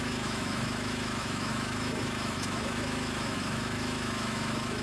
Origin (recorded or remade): remade